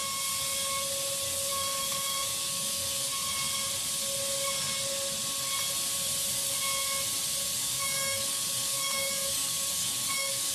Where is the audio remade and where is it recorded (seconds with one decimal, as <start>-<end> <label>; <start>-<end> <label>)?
0.0-1.5 recorded; 1.5-3.1 remade; 3.1-7.6 recorded; 7.6-10.5 remade